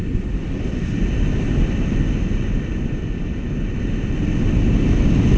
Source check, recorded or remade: recorded